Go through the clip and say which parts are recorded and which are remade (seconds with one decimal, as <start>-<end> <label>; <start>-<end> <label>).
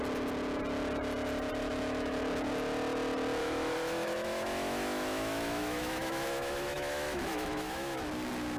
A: 0.0-1.6 recorded; 1.6-2.2 remade; 2.2-3.4 recorded; 3.4-8.1 remade; 8.1-8.6 recorded